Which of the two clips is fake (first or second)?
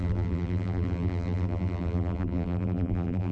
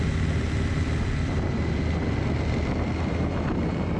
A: first